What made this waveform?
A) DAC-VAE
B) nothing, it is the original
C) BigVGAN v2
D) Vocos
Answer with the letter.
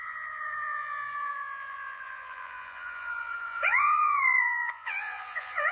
D